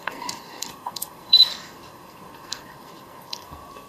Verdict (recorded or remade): remade